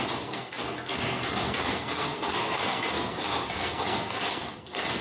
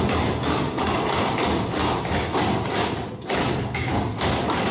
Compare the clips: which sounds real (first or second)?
second